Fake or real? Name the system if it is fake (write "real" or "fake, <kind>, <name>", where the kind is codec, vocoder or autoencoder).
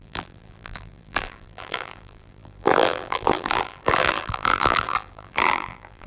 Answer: fake, vocoder, BigVGAN v2